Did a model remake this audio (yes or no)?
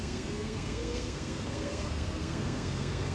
yes